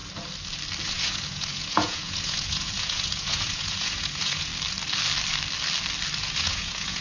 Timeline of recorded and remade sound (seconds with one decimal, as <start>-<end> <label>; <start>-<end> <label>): 0.0-0.8 recorded; 0.8-4.5 remade; 4.5-6.2 recorded; 6.2-7.0 remade